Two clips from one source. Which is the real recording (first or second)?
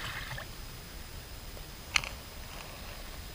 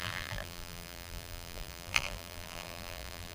first